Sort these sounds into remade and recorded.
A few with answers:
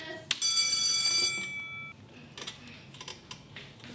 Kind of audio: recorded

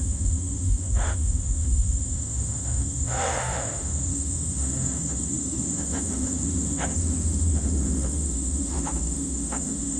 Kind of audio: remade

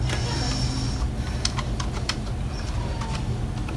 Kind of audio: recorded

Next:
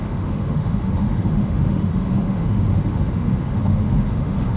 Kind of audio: remade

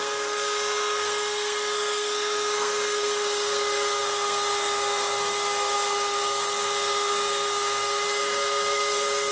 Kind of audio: remade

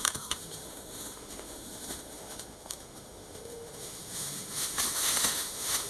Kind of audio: remade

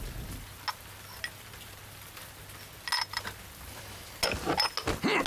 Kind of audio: recorded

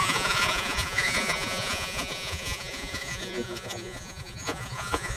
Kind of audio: remade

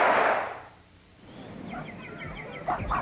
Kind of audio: recorded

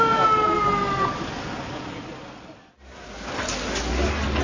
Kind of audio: recorded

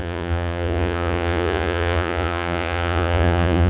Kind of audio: remade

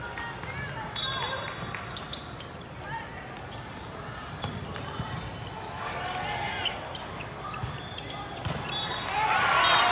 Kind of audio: recorded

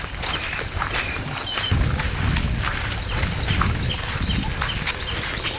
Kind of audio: recorded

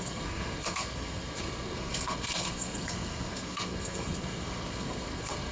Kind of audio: remade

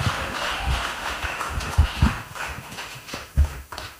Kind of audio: remade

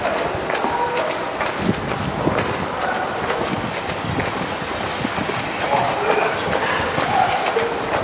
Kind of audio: recorded